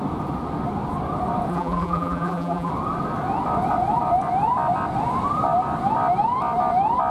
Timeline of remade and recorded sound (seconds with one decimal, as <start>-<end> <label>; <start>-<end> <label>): 0.0-1.5 recorded; 1.5-2.7 remade; 2.7-7.1 recorded